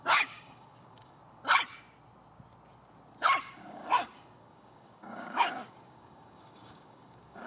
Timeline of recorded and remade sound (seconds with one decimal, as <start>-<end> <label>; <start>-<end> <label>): 0.0-1.2 remade; 1.2-3.4 recorded; 3.4-7.5 remade

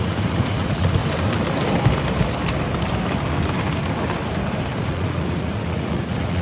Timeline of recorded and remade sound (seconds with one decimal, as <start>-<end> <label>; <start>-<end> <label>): 0.0-1.0 remade; 1.0-4.8 recorded; 4.8-6.4 remade

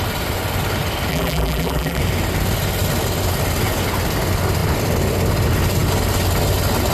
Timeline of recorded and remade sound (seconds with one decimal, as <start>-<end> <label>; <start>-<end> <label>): 0.0-1.1 recorded; 1.1-2.0 remade; 2.0-6.9 recorded

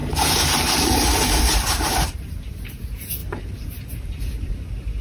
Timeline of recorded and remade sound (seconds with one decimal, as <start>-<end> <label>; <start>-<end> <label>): 0.0-5.0 remade